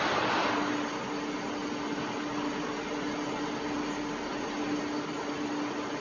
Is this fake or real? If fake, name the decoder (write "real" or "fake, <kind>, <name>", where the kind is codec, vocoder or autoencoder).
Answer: real